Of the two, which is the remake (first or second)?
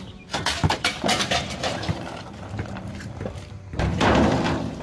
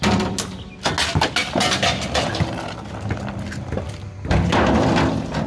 first